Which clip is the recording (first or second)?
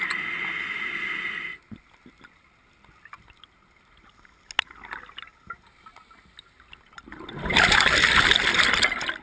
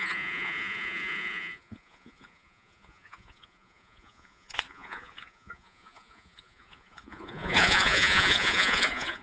first